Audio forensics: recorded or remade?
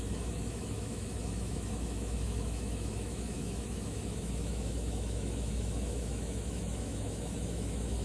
remade